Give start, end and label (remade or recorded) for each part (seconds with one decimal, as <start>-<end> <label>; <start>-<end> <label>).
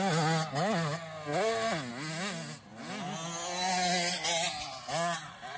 0.0-5.6 recorded